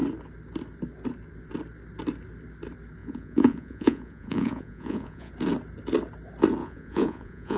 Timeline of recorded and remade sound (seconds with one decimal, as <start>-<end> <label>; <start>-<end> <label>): 0.0-3.0 recorded; 3.0-5.3 remade; 5.3-6.6 recorded; 6.6-7.6 remade